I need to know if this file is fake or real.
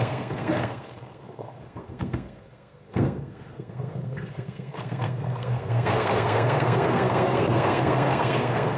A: fake